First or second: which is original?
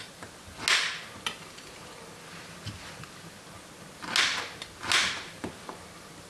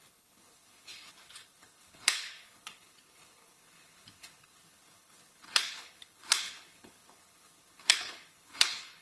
first